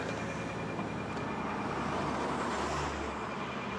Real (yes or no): yes